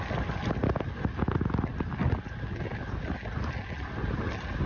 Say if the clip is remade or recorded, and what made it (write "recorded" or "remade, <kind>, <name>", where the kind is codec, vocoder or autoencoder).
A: recorded